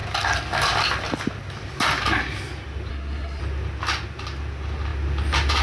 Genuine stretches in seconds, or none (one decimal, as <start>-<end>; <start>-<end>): 0.0-2.9; 3.4-5.6